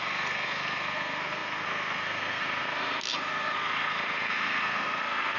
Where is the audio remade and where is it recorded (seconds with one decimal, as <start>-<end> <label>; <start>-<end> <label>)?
0.0-5.4 remade